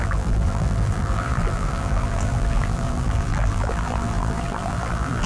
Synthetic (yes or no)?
yes